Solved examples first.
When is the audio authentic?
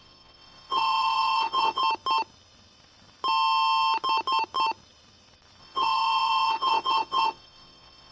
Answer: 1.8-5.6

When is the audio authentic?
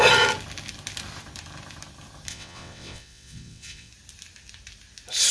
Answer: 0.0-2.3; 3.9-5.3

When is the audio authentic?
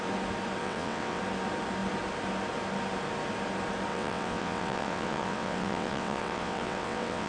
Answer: 0.0-0.6; 1.2-3.9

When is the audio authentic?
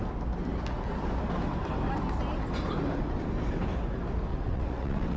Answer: 0.0-4.3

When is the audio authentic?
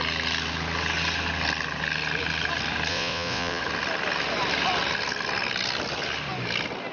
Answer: 0.0-2.9; 3.6-6.9